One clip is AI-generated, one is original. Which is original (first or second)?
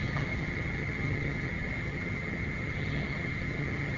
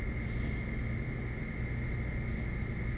second